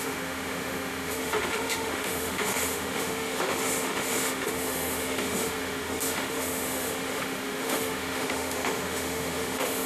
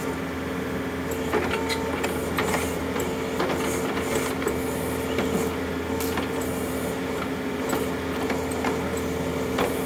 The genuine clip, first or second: second